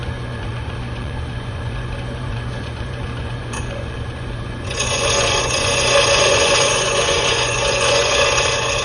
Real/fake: fake